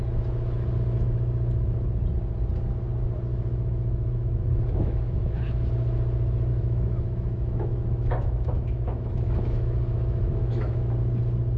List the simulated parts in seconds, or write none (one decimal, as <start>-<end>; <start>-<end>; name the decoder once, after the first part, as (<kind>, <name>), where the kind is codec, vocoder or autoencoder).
3.3-5.7 (autoencoder, DAC-VAE); 6.5-10.9